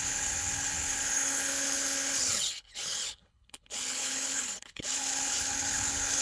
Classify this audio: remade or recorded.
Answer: remade